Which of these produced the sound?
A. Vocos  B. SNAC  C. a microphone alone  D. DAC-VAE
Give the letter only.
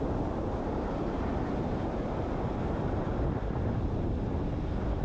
C